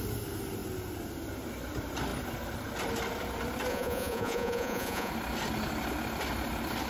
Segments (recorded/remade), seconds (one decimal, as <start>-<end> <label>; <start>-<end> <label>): 0.0-3.7 recorded; 3.7-5.1 remade; 5.1-6.9 recorded